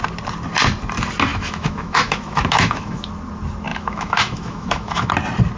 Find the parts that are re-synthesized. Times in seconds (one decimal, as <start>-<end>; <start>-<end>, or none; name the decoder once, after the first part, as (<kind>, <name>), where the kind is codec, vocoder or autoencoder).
1.3-3.1 (autoencoder, DAC-VAE); 3.7-5.1